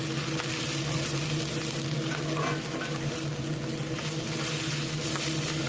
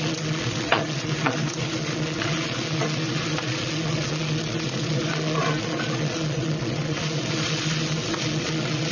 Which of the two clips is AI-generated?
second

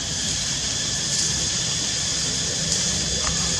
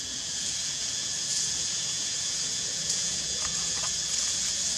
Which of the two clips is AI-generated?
second